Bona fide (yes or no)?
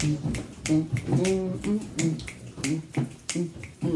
yes